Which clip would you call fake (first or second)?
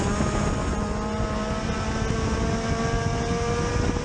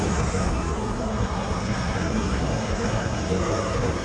second